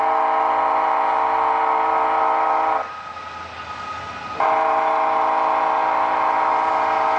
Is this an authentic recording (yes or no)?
yes